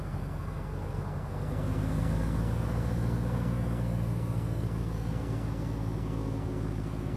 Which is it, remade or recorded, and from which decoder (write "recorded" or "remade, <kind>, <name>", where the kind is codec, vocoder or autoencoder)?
remade, codec, SNAC